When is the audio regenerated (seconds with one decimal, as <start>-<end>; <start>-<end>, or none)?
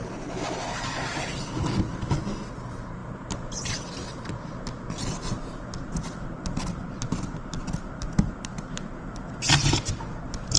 none